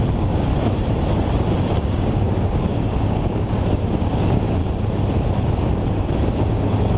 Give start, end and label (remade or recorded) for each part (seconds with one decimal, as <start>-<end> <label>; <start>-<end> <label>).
0.0-0.5 remade; 0.5-1.6 recorded; 1.6-4.6 remade; 4.6-5.5 recorded; 5.5-7.0 remade